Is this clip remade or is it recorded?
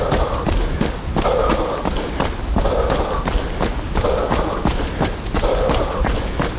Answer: recorded